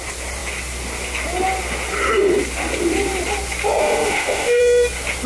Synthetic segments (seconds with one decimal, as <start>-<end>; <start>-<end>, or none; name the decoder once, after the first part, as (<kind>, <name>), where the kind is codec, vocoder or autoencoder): 3.8-4.6 (autoencoder, DAC-VAE)

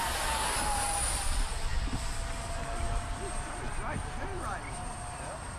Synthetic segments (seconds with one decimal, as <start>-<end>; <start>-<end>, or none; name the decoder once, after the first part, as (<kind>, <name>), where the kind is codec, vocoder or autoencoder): 0.0-5.6 (vocoder, BigVGAN v2)

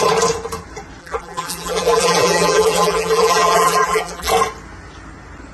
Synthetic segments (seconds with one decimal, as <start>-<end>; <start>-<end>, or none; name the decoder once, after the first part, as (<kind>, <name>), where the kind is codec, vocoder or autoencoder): 1.0-4.3 (vocoder, BigVGAN v2)

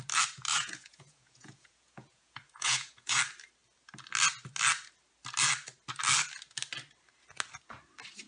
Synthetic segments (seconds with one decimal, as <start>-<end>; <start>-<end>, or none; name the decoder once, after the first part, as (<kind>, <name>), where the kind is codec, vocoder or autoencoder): 0.5-3.2 (vocoder, Vocos)

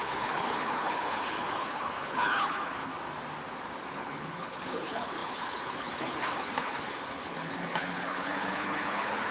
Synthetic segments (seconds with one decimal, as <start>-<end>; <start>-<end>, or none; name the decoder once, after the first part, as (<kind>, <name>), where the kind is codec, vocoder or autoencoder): 0.0-2.9 (codec, HILCodec); 3.9-9.3